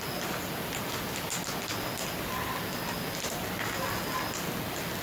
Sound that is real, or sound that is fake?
real